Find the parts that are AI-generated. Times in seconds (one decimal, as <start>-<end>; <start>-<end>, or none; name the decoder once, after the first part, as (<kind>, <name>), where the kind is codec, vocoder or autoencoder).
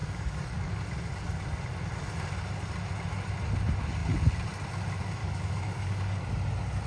0.0-0.8 (codec, DAC); 5.2-6.2